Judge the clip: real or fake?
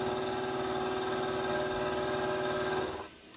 real